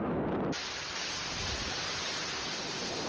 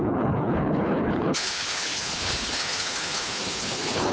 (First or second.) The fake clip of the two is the second